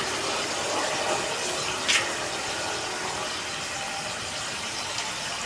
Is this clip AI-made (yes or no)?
no